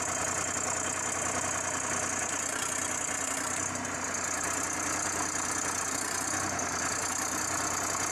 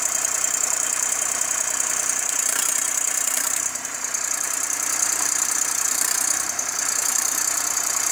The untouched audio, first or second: first